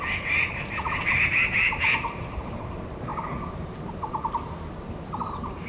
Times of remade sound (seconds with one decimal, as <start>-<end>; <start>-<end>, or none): 0.0-3.1; 3.8-5.7